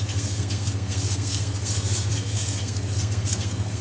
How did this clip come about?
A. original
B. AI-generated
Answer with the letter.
B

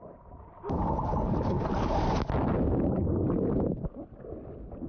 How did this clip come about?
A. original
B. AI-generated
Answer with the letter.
A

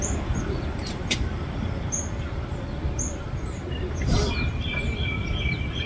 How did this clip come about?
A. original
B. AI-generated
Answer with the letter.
B